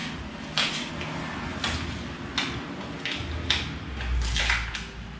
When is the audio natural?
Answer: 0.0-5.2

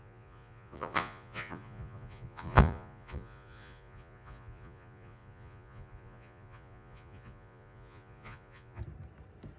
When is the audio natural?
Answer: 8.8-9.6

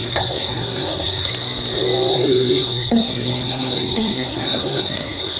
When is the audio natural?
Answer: 1.3-2.1

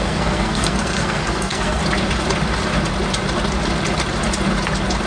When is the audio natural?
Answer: 1.8-5.1

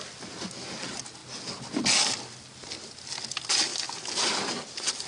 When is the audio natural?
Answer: 0.0-5.1